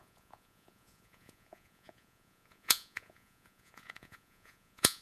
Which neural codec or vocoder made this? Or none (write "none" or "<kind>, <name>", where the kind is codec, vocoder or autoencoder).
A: vocoder, Vocos